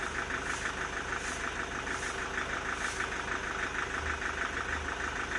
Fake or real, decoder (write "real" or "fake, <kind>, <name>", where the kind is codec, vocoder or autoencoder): real